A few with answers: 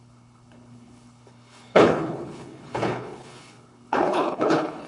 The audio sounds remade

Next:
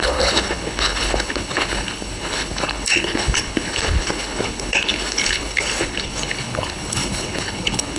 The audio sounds remade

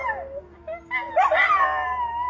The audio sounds recorded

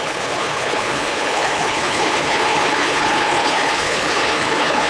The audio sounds remade